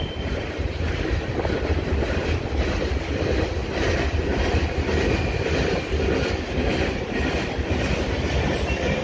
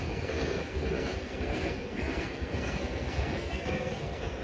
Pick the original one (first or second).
first